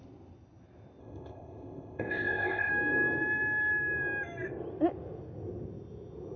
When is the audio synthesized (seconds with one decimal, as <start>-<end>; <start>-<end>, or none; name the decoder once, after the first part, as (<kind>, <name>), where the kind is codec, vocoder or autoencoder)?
1.0-2.7 (codec, ZipCodec)